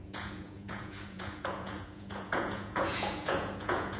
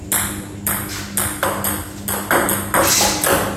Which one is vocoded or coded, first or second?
first